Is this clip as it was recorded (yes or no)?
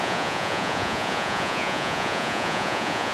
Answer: no